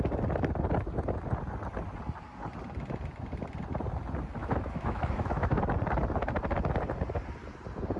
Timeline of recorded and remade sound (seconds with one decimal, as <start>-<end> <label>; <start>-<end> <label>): 0.0-4.4 recorded; 4.4-5.6 remade; 5.6-8.0 recorded